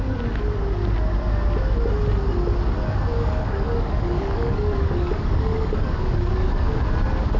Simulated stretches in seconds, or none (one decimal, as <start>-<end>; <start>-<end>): 3.1-6.8